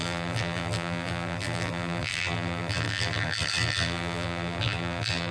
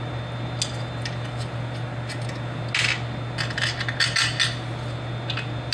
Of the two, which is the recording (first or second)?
second